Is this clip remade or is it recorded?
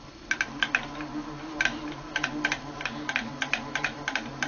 recorded